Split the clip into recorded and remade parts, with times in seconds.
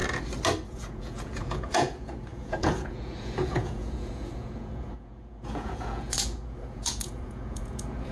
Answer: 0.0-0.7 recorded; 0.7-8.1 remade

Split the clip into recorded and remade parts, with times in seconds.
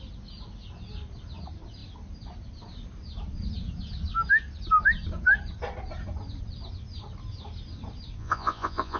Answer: 0.0-8.2 recorded; 8.2-9.0 remade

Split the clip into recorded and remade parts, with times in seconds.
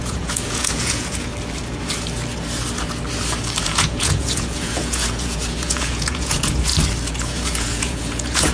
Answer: 0.0-1.3 remade; 1.3-3.6 recorded; 3.6-6.7 remade; 6.7-7.2 recorded; 7.2-8.5 remade